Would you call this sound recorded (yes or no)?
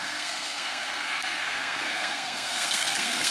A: no